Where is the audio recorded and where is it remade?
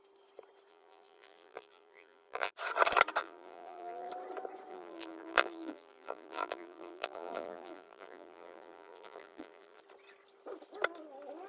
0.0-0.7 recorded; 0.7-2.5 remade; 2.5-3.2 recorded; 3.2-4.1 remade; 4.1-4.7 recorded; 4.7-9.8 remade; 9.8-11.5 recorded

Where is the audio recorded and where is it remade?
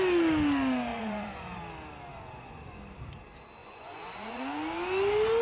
0.0-0.9 recorded; 0.9-1.6 remade; 1.6-2.1 recorded; 2.1-2.8 remade; 2.8-3.6 recorded; 3.6-4.5 remade; 4.5-5.4 recorded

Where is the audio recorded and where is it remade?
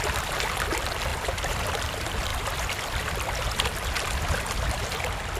0.0-1.1 recorded; 1.1-1.8 remade; 1.8-2.3 recorded; 2.3-3.1 remade; 3.1-5.4 recorded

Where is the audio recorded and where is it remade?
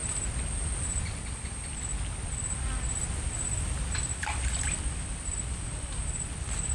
0.0-6.7 recorded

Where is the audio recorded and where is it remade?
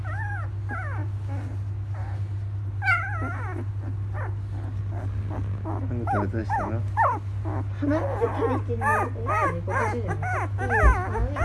0.0-11.4 recorded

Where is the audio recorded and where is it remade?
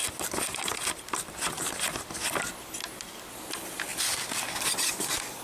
0.0-3.2 remade; 3.2-5.4 recorded